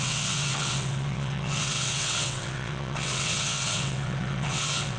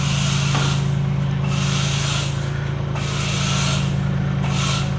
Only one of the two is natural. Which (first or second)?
second